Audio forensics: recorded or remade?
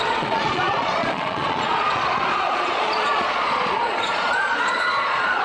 remade